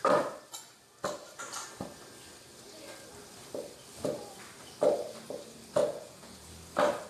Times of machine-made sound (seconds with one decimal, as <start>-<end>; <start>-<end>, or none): 5.8-6.5